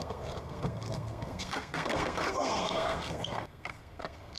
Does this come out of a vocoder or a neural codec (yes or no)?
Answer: yes